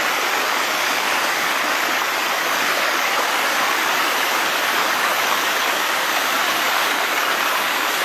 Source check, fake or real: fake